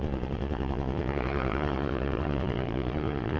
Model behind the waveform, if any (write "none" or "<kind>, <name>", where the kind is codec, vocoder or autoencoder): vocoder, Vocos